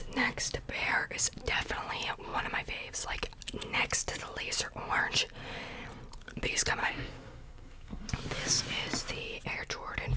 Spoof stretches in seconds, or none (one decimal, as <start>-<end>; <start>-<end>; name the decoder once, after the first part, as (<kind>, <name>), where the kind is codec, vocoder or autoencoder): 6.8-8.1 (codec, SNAC)